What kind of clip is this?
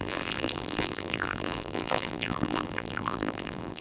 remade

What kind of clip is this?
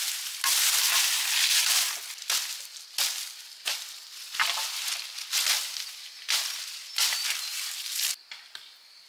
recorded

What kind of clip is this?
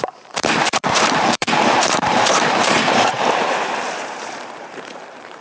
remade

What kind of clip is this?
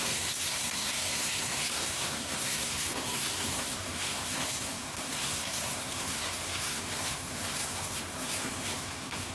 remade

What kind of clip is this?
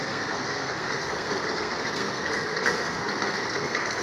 remade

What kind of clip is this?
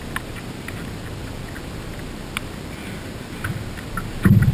recorded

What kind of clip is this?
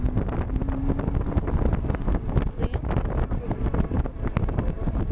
recorded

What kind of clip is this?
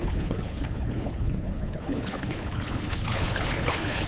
remade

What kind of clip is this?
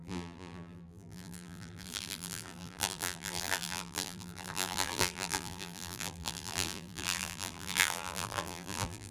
remade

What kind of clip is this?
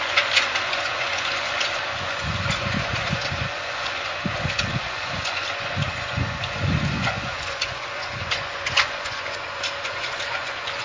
remade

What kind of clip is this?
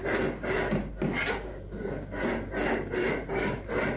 recorded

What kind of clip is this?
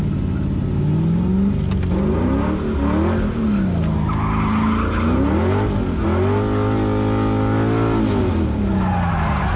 recorded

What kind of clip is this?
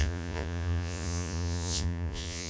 remade